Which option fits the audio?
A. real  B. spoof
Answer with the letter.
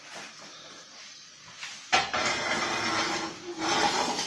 A